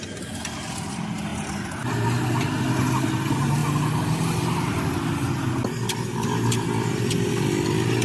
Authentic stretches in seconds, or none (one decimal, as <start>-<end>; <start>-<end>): 0.0-8.0